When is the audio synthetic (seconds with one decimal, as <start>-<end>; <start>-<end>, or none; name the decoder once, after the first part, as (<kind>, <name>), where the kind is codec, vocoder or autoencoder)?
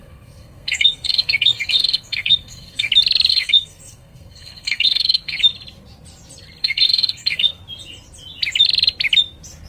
0.0-2.9 (codec, SNAC); 3.3-5.4; 6.6-7.6